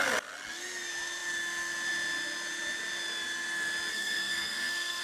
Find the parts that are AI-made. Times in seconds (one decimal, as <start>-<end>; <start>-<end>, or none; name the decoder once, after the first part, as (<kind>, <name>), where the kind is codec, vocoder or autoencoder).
3.9-5.0 (codec, SNAC)